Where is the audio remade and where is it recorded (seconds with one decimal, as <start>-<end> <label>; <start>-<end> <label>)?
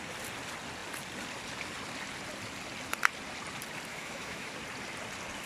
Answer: 0.0-3.9 recorded; 3.9-4.5 remade; 4.5-5.5 recorded